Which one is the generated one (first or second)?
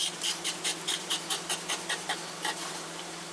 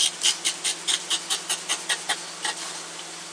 first